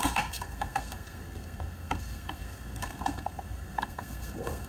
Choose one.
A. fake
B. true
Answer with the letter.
A